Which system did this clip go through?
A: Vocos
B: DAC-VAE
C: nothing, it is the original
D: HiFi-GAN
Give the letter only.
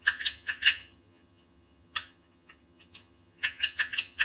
D